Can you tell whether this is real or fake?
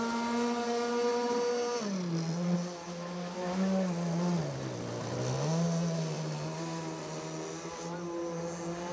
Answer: real